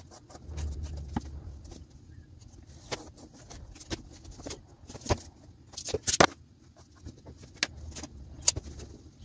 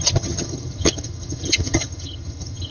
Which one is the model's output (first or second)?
second